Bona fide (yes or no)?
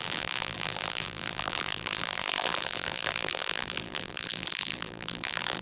no